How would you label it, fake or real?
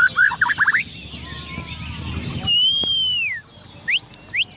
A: real